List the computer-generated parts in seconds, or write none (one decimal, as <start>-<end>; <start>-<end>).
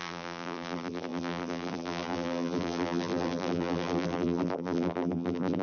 0.0-5.6